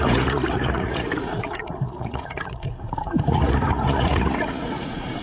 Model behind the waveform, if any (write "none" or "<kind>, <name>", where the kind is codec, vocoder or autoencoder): vocoder, Vocos